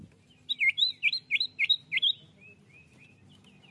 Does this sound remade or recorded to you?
recorded